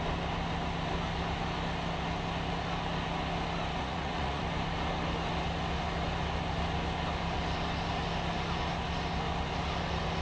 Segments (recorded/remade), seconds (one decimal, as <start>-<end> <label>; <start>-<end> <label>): 0.0-3.8 recorded; 3.8-4.4 remade; 4.4-10.2 recorded